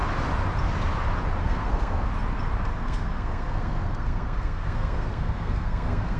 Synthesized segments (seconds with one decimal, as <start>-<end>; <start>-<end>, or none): 1.4-2.1; 2.7-6.2